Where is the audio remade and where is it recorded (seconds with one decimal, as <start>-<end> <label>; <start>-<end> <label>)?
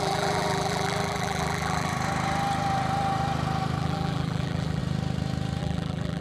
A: 0.0-1.9 remade; 1.9-3.8 recorded; 3.8-4.8 remade; 4.8-5.6 recorded; 5.6-6.2 remade